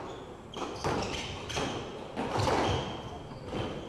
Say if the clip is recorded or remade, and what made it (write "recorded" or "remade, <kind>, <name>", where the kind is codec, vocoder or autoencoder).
recorded